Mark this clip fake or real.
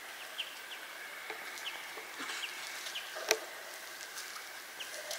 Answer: real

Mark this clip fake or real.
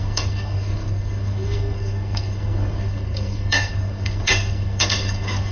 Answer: fake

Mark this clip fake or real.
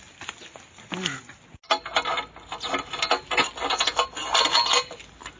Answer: real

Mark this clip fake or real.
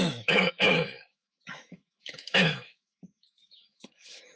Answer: fake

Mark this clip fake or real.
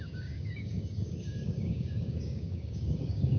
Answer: fake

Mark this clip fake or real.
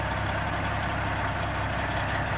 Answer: real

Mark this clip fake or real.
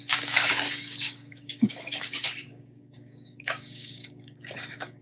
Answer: fake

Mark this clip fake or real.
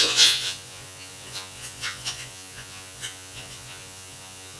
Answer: fake